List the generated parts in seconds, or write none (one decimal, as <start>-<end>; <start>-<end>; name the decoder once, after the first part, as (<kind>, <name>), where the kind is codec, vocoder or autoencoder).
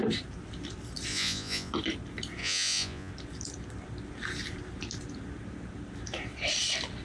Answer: 1.1-1.7 (vocoder, Vocos); 2.4-3.1